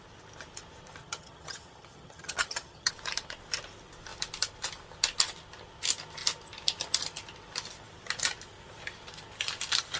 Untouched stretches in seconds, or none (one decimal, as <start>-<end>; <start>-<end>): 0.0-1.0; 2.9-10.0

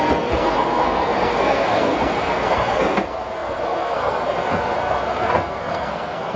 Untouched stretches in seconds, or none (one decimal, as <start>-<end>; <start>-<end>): none

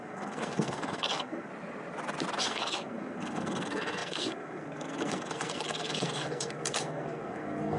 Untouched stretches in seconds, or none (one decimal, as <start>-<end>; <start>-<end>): 1.5-2.4

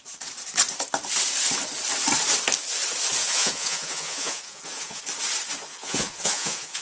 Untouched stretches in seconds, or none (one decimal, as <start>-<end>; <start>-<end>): 0.0-3.2; 5.0-5.7

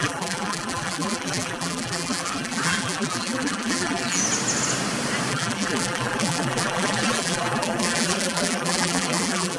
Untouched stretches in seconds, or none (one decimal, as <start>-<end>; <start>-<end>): 4.2-5.3